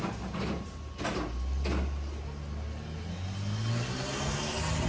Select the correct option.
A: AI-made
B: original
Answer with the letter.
B